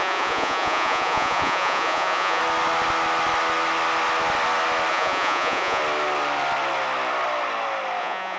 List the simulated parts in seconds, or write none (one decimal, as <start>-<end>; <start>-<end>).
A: 0.0-2.4; 4.9-5.8; 8.0-8.4